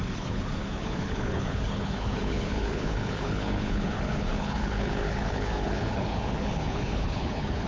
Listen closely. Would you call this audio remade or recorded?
remade